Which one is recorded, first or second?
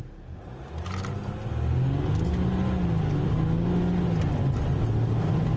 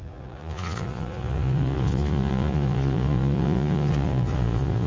first